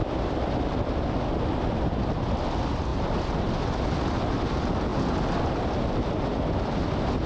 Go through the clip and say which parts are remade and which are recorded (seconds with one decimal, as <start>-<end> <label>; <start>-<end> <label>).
0.0-7.3 recorded